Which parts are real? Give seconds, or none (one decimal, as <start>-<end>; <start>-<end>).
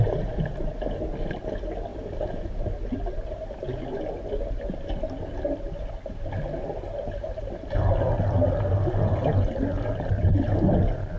0.0-11.2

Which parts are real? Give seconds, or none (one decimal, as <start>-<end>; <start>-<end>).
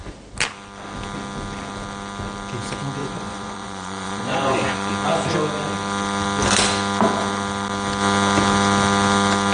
0.0-3.0; 4.9-9.5